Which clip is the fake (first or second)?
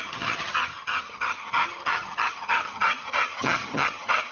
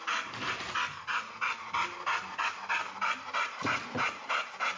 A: first